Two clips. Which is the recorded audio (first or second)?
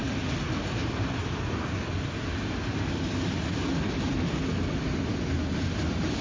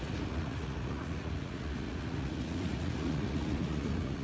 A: first